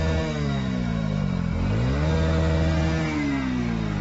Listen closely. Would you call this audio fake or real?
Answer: real